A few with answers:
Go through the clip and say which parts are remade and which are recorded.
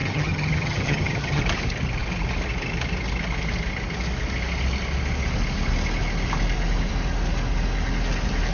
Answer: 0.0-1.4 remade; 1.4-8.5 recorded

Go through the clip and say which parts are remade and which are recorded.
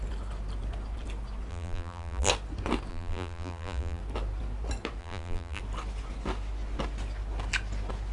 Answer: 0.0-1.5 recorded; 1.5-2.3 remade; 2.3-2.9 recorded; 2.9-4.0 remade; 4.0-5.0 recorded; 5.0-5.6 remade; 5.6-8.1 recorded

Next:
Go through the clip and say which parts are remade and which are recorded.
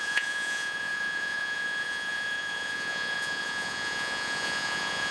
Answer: 0.0-5.1 remade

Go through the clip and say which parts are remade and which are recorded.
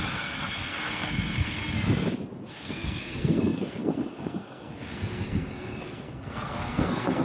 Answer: 0.0-1.6 remade; 1.6-2.5 recorded; 2.5-7.2 remade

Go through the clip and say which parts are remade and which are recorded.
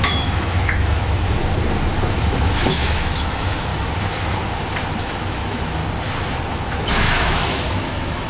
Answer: 0.0-1.4 remade; 1.4-2.2 recorded; 2.2-3.7 remade; 3.7-5.0 recorded; 5.0-5.8 remade; 5.8-6.5 recorded; 6.5-8.3 remade